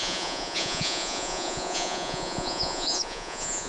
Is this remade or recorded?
remade